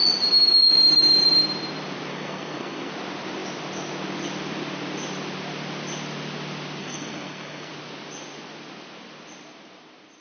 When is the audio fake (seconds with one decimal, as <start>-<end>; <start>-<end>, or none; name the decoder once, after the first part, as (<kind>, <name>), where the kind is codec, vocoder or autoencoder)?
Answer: 2.1-2.9 (codec, SNAC); 6.8-7.7